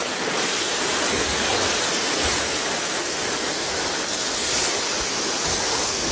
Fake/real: real